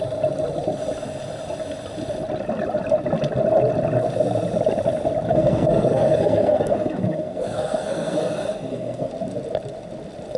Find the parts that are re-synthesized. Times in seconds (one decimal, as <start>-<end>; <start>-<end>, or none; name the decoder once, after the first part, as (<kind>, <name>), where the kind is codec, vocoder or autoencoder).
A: 5.3-9.1 (codec, SNAC)

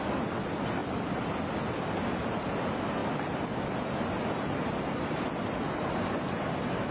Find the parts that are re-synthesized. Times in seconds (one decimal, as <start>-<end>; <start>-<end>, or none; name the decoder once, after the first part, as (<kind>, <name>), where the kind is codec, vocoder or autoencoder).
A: none

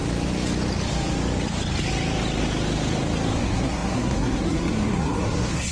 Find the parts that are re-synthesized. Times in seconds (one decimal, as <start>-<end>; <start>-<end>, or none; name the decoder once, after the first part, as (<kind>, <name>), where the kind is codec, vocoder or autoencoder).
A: 3.4-5.7 (codec, SNAC)

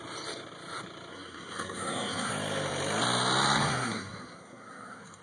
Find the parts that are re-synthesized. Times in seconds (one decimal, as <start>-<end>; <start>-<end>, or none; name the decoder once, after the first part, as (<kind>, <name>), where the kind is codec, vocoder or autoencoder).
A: 1.1-2.3 (codec, SNAC); 3.6-5.2

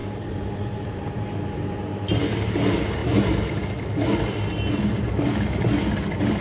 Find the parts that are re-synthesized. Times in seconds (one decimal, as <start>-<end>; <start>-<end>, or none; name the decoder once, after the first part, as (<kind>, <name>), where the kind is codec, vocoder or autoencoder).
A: 0.0-1.8 (vocoder, BigVGAN v2)